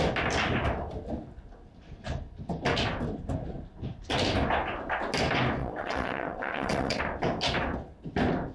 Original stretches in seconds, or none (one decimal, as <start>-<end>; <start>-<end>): 0.0-5.6; 7.0-8.5